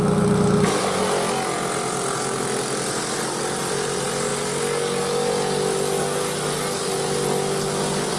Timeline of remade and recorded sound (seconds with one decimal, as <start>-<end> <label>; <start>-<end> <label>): 0.0-8.2 recorded